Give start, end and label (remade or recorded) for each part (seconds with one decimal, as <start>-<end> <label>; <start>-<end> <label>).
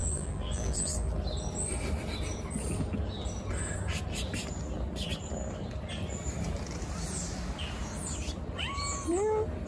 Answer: 0.0-1.1 remade; 1.1-9.7 recorded